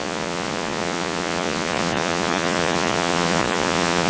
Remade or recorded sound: remade